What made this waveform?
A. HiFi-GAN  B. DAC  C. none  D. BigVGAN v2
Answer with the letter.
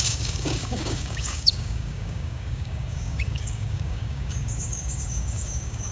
B